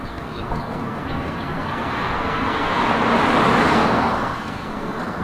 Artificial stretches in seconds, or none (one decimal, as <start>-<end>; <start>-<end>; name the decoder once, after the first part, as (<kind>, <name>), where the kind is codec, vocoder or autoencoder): 0.0-2.8 (codec, SNAC); 3.6-5.2